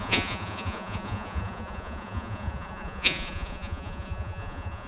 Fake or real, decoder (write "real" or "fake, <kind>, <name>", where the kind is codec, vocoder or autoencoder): fake, vocoder, Vocos